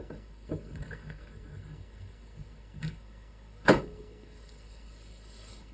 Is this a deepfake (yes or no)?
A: yes